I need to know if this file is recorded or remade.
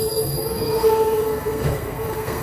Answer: remade